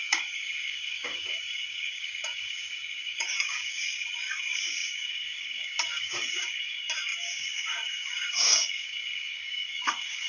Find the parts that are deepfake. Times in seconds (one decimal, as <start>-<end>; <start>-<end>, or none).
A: 0.0-10.3